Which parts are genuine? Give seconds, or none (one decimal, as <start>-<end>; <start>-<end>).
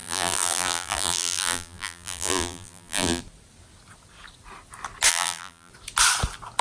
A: 3.2-5.1; 5.7-6.6